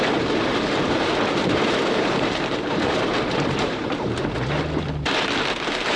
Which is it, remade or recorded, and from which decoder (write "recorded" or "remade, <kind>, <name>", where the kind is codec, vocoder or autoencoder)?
remade, vocoder, BigVGAN v2